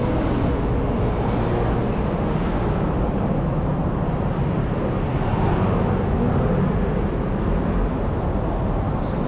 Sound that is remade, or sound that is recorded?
recorded